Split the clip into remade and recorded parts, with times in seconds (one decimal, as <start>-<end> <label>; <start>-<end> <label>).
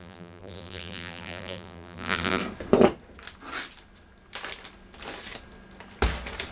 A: 0.0-2.4 remade; 2.4-6.5 recorded